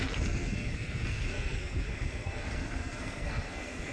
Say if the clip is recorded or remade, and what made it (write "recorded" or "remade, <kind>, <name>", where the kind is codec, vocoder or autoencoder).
remade, codec, SNAC